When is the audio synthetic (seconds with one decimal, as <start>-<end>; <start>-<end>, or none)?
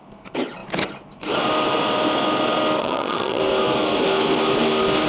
2.8-3.4